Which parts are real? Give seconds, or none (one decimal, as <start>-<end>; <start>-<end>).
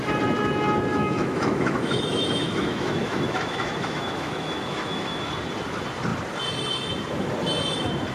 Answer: 0.0-0.9; 5.3-8.1